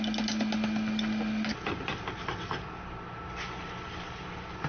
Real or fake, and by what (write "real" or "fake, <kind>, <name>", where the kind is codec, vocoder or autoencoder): real